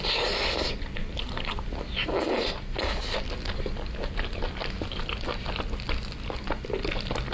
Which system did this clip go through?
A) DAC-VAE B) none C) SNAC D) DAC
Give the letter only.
B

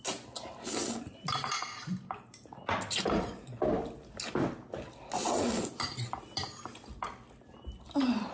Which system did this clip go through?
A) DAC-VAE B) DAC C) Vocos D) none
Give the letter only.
D